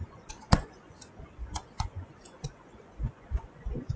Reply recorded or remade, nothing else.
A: remade